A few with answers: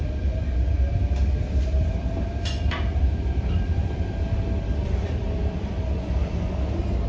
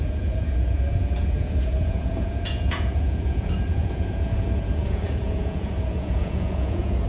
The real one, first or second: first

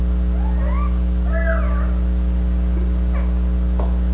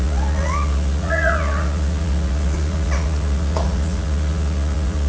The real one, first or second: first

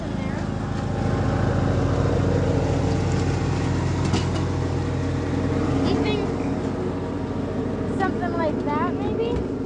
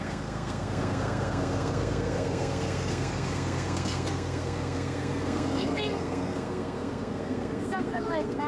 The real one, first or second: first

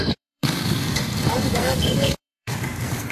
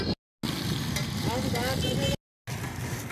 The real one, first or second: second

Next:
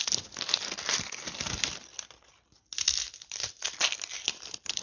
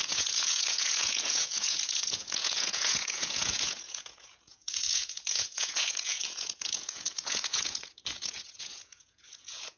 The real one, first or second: first